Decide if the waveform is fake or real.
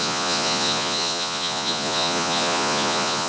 fake